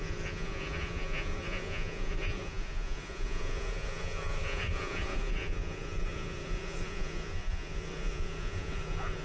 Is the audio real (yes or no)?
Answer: no